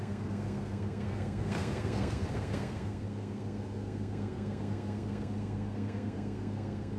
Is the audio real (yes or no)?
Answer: no